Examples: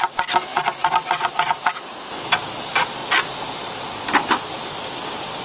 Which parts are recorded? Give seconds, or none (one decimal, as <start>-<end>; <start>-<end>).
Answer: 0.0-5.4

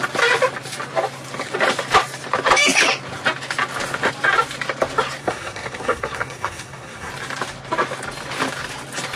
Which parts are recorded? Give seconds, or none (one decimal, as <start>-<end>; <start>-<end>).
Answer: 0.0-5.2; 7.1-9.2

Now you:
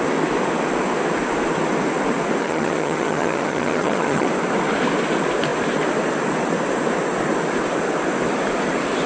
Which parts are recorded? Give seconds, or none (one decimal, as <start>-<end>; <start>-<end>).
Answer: 0.0-2.4; 4.3-9.1

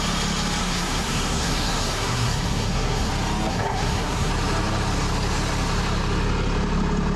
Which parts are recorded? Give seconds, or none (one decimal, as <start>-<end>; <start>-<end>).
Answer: 0.0-0.6; 3.1-3.5; 4.3-7.2

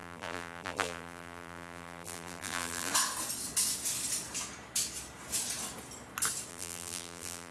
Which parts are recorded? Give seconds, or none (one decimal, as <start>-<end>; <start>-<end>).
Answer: 2.9-6.5

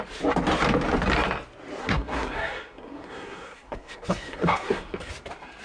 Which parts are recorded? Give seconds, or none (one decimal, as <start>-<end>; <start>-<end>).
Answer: 0.0-1.8; 5.1-5.6